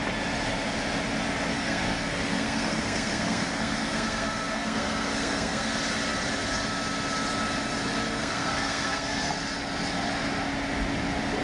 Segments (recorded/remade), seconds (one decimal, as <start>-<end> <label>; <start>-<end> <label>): 0.0-1.5 recorded; 1.5-5.7 remade; 5.7-8.2 recorded; 8.2-9.3 remade; 9.3-11.4 recorded